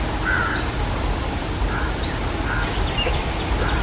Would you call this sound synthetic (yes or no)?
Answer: no